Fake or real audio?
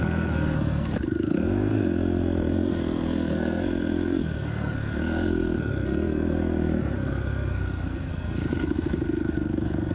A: fake